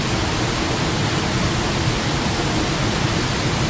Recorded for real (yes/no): yes